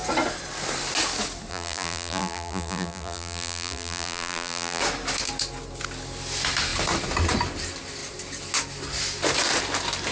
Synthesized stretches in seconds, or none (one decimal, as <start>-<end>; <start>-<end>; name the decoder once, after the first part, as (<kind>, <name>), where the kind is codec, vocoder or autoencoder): 1.5-4.8 (vocoder, BigVGAN v2)